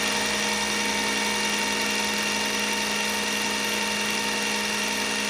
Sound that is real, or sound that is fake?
real